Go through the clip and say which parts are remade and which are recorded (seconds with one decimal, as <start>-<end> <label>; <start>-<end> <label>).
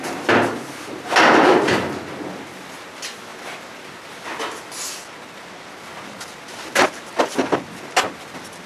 0.0-8.7 recorded